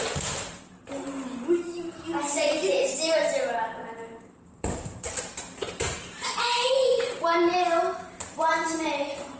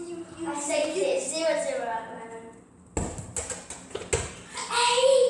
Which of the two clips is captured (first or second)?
second